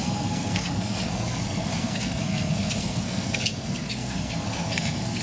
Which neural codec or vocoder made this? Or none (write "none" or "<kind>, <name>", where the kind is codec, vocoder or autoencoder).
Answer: codec, SNAC